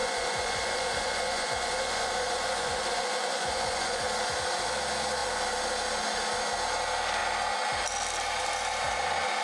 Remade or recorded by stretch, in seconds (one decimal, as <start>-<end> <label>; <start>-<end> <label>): 0.0-4.0 remade; 4.0-9.4 recorded